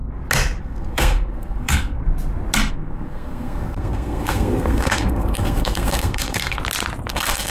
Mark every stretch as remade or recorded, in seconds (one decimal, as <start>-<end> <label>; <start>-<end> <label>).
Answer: 0.0-0.6 recorded; 0.6-2.0 remade; 2.0-2.7 recorded; 2.7-6.6 remade; 6.6-7.1 recorded; 7.1-7.5 remade